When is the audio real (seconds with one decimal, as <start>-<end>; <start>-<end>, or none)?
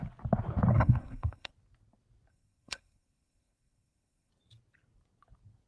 0.0-0.7; 1.5-2.3; 4.3-5.7